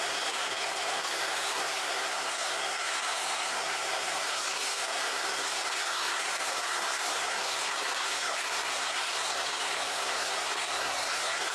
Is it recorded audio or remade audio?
remade